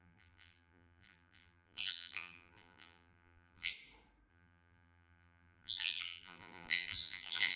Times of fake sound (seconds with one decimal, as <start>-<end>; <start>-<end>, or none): 0.0-3.7; 4.3-7.6